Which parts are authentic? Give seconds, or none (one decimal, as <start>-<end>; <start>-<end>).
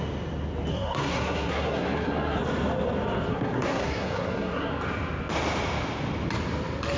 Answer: 0.0-0.7; 2.4-3.3; 4.7-7.0